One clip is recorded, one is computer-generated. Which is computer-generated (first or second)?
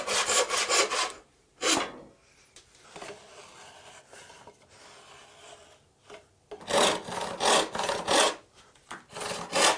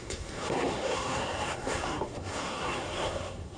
second